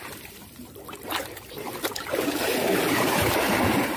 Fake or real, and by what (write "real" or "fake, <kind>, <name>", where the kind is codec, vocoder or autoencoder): fake, vocoder, BigVGAN v2